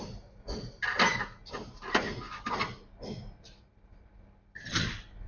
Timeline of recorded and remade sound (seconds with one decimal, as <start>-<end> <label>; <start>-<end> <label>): 0.0-5.3 recorded